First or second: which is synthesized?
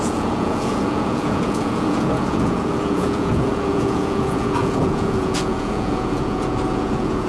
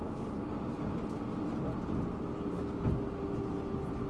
first